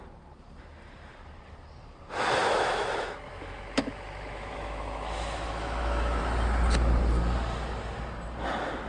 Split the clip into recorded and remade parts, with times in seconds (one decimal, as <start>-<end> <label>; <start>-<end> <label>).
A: 0.0-2.4 recorded; 2.4-6.2 remade; 6.2-8.9 recorded